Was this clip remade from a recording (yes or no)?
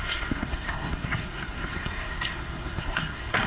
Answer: yes